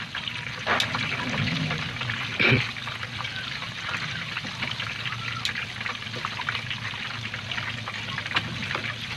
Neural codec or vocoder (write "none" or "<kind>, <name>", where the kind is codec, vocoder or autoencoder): none